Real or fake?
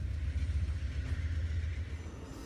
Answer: real